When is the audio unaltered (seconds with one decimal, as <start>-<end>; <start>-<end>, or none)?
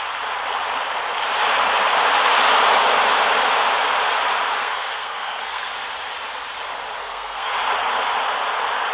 0.0-4.6; 5.7-7.0; 7.5-8.9